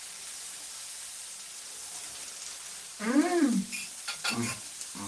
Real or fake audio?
fake